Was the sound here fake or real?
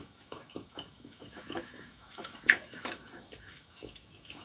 fake